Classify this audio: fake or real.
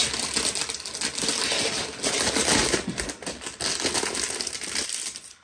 real